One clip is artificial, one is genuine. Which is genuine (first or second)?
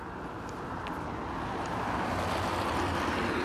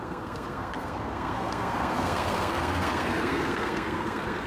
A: first